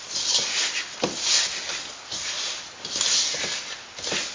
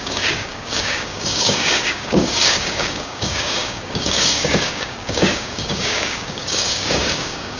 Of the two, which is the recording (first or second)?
first